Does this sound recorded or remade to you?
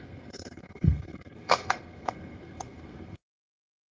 remade